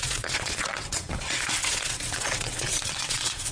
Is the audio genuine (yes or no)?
no